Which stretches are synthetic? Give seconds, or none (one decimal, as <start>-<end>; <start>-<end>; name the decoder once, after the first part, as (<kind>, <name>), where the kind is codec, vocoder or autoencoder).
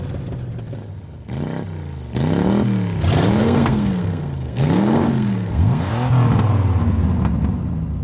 3.4-5.9 (codec, SNAC)